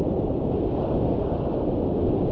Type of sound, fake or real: real